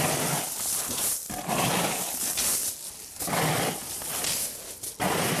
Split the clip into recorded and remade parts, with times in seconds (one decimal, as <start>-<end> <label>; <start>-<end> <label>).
0.0-5.4 recorded